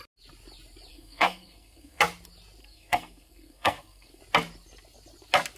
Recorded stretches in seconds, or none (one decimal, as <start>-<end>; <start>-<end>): 0.0-0.9; 2.0-2.6; 4.2-5.6